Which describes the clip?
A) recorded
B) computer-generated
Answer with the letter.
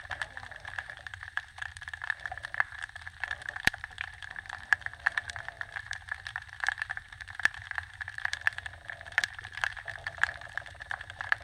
B